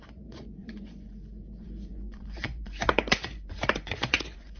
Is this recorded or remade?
remade